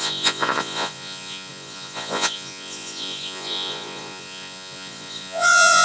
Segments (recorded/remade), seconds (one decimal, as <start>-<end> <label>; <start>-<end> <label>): 0.0-5.8 remade